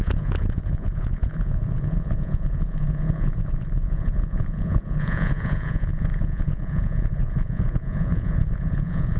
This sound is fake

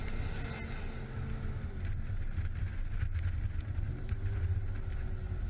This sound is real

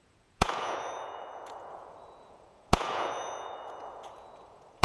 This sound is fake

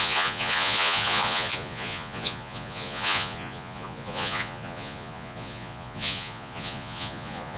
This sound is fake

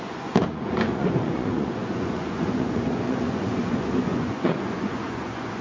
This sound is fake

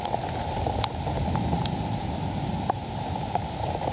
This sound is real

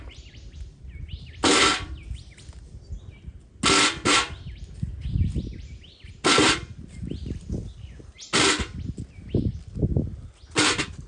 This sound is real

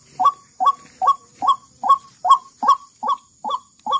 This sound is real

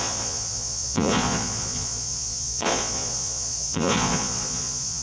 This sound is fake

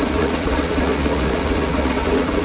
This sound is fake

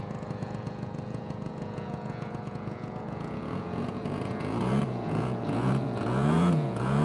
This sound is fake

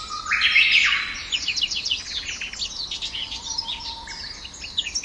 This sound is real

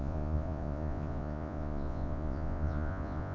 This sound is fake